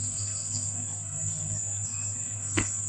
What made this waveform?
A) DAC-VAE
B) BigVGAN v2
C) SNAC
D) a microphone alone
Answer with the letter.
C